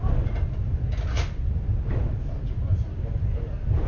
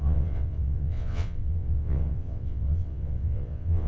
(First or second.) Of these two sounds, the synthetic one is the second